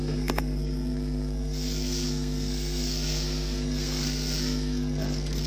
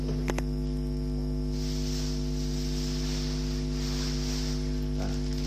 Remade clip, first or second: first